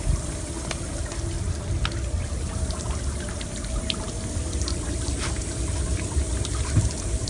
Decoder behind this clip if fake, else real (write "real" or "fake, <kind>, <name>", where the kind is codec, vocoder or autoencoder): real